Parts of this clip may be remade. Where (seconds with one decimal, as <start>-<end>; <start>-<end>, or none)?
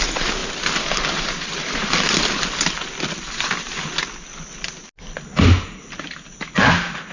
none